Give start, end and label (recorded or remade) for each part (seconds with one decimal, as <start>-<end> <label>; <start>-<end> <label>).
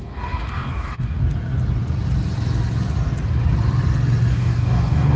0.0-1.2 remade; 1.2-4.3 recorded; 4.3-5.2 remade